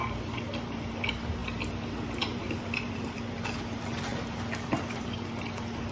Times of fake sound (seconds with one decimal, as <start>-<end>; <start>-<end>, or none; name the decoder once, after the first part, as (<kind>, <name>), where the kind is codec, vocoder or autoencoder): 0.0-0.9 (vocoder, BigVGAN v2); 1.4-3.3; 4.1-5.1